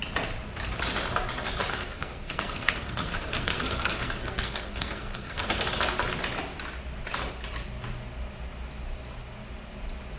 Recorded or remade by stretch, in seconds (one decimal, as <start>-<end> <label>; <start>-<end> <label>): 0.0-1.7 recorded; 1.7-5.6 remade; 5.6-10.2 recorded